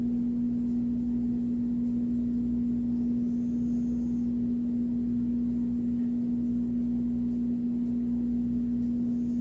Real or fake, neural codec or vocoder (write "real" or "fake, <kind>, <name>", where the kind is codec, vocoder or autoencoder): real